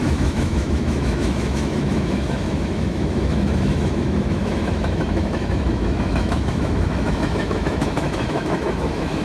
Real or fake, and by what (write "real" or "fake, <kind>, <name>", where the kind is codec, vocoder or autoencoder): fake, autoencoder, DAC-VAE